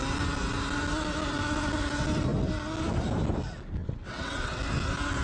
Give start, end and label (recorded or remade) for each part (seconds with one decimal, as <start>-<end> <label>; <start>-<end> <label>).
0.0-3.8 recorded; 3.8-4.6 remade; 4.6-5.2 recorded